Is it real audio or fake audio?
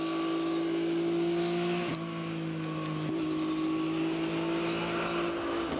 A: real